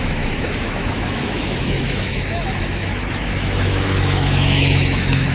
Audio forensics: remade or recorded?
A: remade